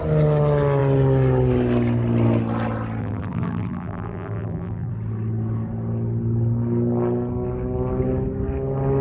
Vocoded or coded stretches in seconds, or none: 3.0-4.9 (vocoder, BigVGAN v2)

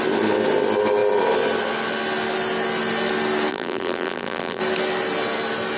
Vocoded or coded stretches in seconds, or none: 3.5-4.6 (vocoder, BigVGAN v2)

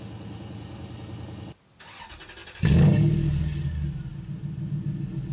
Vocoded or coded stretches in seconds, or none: none

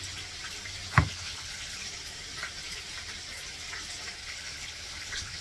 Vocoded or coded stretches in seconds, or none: 1.1-1.8 (codec, HILCodec); 4.2-5.4

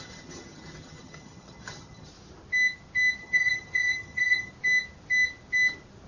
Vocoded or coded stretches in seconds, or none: 0.0-2.1 (vocoder, HiFi-GAN); 3.2-4.5